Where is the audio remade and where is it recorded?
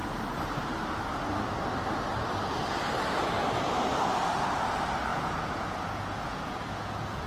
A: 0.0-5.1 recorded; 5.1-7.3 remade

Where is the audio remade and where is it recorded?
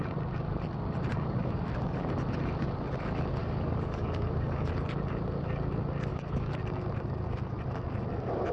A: 0.0-1.1 recorded; 1.1-2.1 remade; 2.1-3.4 recorded; 3.4-4.7 remade; 4.7-6.1 recorded; 6.1-6.6 remade; 6.6-8.5 recorded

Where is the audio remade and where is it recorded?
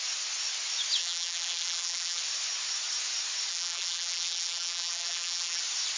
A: 0.0-1.0 recorded; 1.0-2.2 remade; 2.2-3.5 recorded; 3.5-5.6 remade; 5.6-6.0 recorded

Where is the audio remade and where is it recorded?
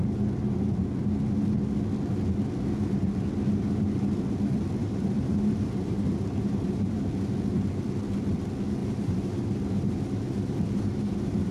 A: 0.0-4.8 recorded; 4.8-7.1 remade; 7.1-8.8 recorded; 8.8-11.5 remade